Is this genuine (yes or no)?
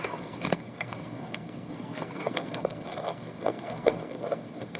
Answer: no